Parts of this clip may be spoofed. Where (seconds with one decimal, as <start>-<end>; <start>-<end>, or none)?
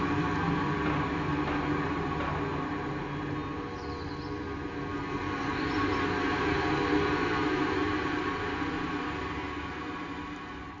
none